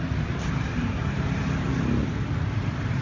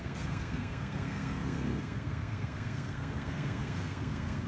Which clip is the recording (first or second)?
first